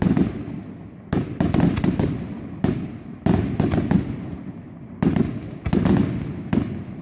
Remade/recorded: recorded